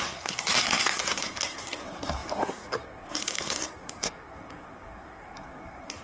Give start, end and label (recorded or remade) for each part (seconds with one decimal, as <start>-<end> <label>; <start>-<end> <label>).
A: 0.0-6.0 remade